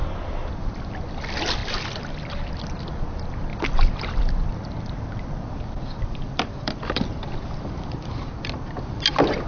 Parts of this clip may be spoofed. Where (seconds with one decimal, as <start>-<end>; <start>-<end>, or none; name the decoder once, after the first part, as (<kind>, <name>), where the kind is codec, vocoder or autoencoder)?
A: 0.0-0.8 (vocoder, BigVGAN v2); 1.6-2.5; 3.5-8.3